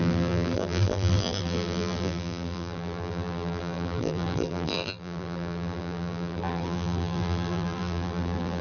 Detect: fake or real fake